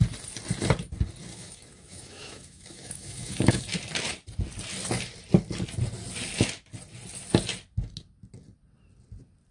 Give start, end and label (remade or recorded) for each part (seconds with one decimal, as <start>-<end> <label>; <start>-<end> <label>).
0.0-1.3 recorded; 1.3-3.6 remade; 3.6-9.5 recorded